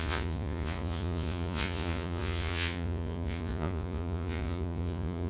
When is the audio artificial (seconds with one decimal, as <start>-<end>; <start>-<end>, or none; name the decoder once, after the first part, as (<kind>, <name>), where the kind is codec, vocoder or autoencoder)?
0.0-5.3 (vocoder, Vocos)